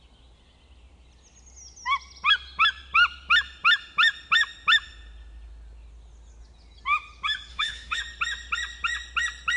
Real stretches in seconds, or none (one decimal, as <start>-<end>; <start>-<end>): 0.0-7.5; 8.0-9.6